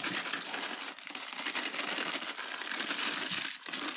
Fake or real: real